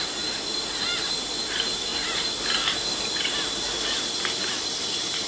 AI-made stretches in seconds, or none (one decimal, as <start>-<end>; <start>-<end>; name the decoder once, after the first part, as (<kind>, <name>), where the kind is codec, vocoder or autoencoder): none